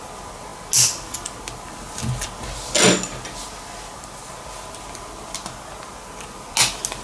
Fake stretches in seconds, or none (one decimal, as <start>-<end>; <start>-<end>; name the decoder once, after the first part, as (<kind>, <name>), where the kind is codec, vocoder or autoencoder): none